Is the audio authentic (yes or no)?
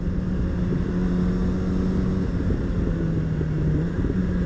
yes